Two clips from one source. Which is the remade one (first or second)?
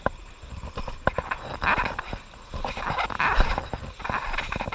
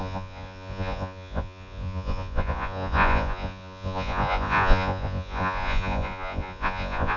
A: second